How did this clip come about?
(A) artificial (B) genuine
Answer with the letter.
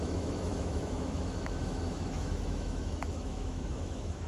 A